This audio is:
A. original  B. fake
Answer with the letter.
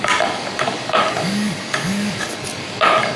B